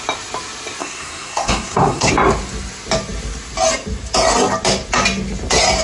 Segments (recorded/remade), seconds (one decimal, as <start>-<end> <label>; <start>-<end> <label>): 0.0-0.8 recorded; 0.8-2.1 remade; 2.1-5.8 recorded